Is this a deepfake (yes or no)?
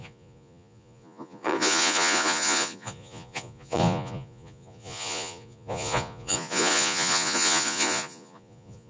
yes